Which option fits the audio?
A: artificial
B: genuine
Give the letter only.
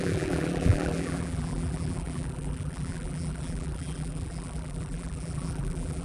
A